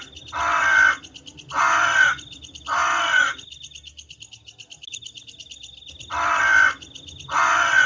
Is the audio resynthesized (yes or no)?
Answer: no